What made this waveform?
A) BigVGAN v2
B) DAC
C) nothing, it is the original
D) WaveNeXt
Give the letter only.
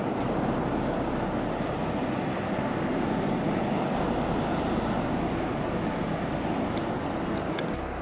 C